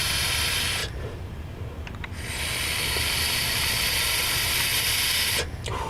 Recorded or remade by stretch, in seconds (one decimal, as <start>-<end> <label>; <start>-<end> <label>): 0.0-5.9 recorded